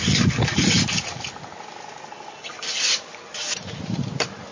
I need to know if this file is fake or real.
real